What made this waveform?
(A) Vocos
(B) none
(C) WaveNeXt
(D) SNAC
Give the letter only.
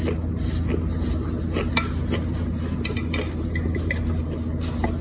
B